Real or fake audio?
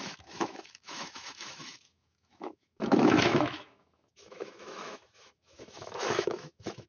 fake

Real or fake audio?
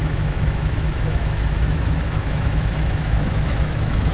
fake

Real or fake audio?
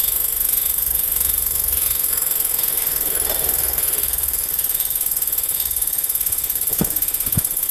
fake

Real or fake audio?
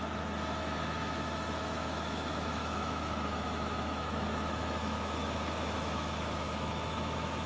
fake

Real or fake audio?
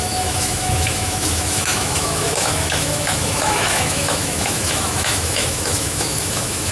fake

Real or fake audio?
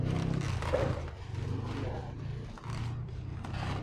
real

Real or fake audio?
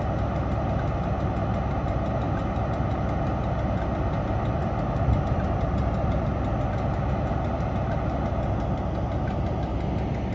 real